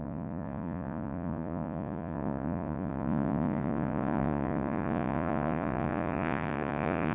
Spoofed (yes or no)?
yes